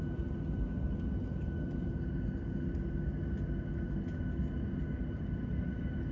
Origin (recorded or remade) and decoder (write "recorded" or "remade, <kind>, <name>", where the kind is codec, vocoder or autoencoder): recorded